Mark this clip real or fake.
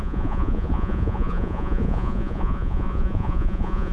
fake